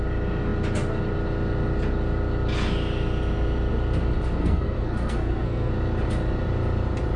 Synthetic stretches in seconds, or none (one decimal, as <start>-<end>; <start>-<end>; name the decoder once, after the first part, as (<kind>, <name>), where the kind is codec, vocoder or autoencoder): 4.4-5.7 (codec, SNAC)